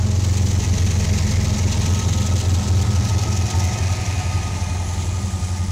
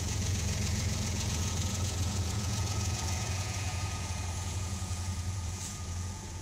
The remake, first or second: second